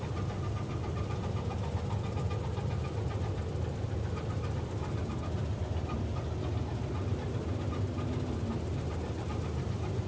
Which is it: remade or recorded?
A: recorded